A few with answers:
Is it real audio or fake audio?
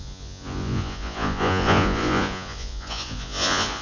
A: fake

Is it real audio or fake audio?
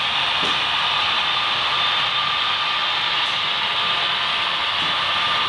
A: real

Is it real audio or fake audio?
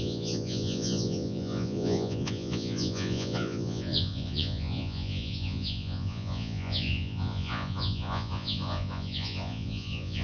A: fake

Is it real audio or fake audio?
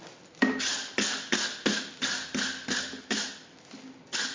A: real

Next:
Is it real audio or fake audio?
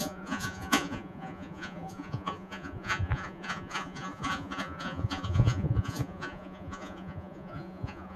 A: fake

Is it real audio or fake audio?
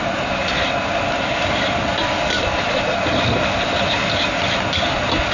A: real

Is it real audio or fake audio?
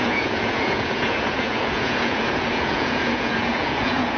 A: fake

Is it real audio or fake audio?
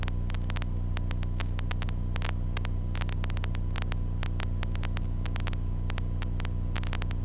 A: real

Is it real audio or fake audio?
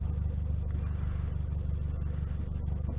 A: real